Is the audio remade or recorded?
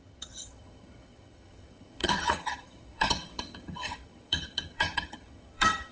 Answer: remade